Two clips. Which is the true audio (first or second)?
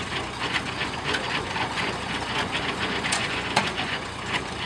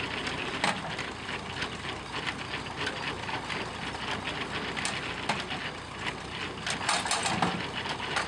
second